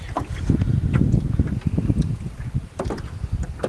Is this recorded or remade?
recorded